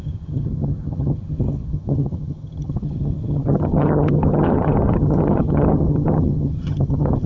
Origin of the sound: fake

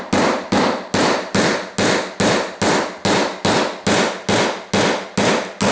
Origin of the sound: real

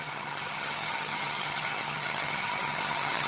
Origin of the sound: fake